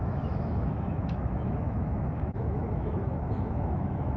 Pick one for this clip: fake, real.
fake